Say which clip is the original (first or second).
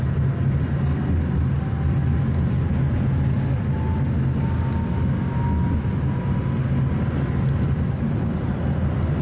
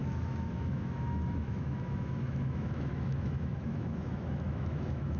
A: first